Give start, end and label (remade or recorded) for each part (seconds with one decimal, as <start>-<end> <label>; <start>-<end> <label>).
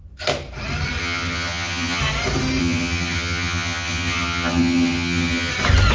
0.0-1.0 recorded; 1.0-2.0 remade; 2.0-2.6 recorded; 2.6-5.5 remade; 5.5-5.9 recorded